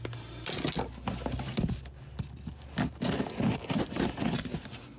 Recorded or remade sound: recorded